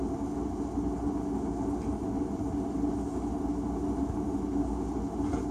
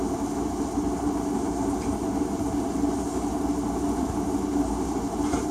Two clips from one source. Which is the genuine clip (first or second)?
first